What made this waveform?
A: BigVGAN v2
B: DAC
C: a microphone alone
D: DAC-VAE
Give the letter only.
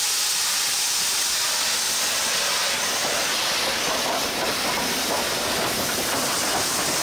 C